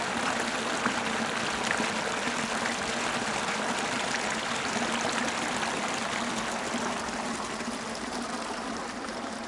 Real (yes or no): yes